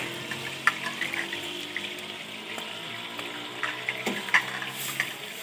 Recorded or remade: recorded